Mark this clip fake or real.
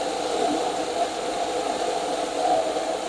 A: real